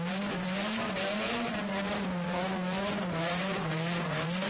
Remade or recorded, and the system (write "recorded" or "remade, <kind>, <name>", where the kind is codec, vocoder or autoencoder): remade, vocoder, BigVGAN v2